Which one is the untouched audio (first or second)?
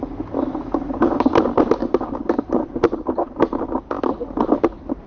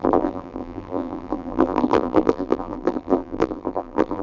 first